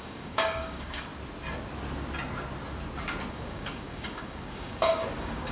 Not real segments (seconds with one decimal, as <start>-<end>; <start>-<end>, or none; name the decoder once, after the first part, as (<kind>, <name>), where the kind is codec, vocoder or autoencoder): 0.0-1.1 (codec, DAC); 3.3-5.5